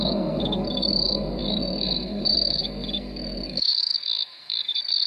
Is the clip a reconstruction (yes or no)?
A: yes